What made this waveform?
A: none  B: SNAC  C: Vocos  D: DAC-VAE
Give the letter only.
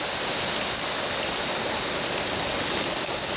A